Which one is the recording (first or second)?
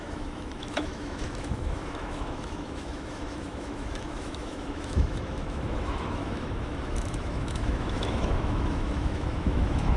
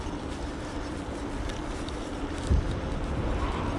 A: second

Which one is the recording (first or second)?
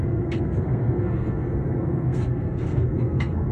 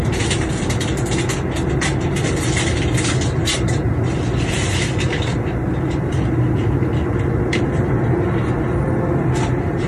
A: second